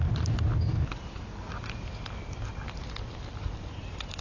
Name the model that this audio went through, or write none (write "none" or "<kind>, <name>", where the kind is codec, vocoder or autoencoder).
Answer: none